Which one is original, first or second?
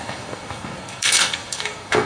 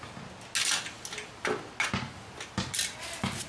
second